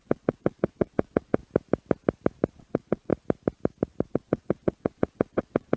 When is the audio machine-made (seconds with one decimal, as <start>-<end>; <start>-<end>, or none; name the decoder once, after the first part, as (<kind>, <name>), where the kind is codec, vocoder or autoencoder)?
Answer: 0.0-1.4 (vocoder, Vocos); 2.6-3.1; 4.1-5.8